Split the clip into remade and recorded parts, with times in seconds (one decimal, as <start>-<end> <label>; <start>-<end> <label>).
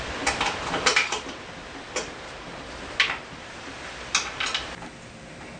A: 0.0-5.6 recorded